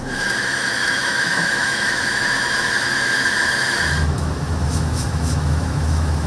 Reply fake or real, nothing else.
fake